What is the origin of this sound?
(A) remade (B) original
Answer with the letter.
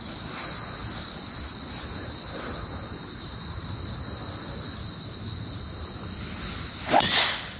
B